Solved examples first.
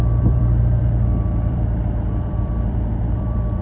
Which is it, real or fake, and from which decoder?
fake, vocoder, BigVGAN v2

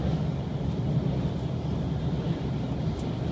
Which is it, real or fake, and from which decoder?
real